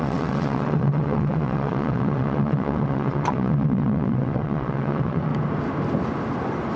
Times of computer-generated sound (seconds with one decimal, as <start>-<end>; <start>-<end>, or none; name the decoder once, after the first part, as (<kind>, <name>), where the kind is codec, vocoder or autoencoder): 0.0-5.3 (vocoder, WaveNeXt)